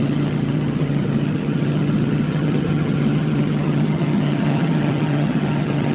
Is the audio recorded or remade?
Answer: remade